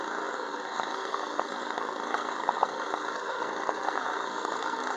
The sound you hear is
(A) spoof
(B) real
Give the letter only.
A